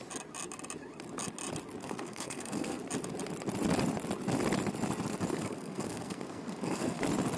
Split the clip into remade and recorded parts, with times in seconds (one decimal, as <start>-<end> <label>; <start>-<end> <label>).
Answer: 0.0-1.8 recorded; 1.8-2.8 remade; 2.8-5.3 recorded; 5.3-7.0 remade; 7.0-7.4 recorded